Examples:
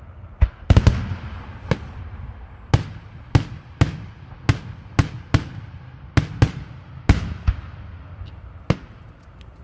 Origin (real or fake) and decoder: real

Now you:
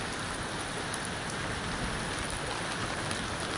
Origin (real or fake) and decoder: real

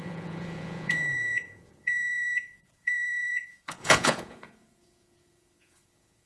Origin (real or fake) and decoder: fake, vocoder, Vocos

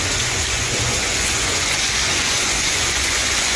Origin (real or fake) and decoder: fake, vocoder, Vocos